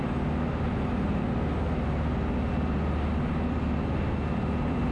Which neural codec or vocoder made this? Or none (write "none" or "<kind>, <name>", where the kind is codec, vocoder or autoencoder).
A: none